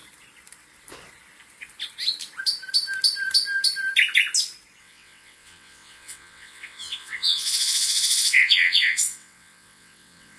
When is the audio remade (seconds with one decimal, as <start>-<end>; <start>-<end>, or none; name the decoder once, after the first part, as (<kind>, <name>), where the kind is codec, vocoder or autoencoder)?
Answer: 4.8-10.4 (vocoder, WaveNeXt)